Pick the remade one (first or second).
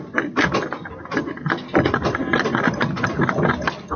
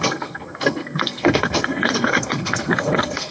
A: second